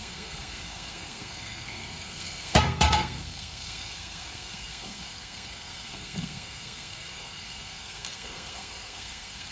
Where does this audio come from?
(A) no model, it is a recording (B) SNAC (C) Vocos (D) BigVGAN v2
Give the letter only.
B